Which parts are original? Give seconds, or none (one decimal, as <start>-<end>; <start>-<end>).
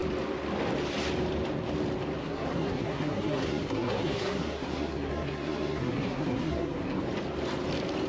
0.0-2.2; 7.0-8.1